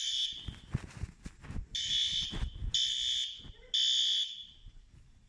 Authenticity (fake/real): real